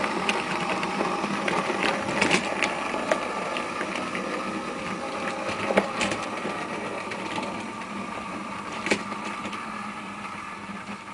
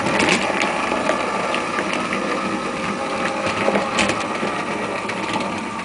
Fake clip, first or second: first